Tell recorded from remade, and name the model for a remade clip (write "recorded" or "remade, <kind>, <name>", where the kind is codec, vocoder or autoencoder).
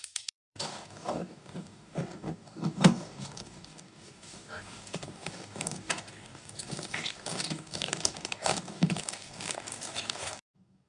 remade, codec, DAC